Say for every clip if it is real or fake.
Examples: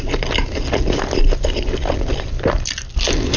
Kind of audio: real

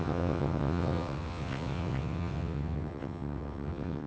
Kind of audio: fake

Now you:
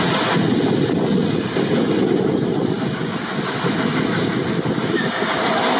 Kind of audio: real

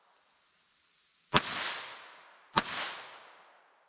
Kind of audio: real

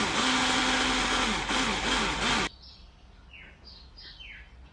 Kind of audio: real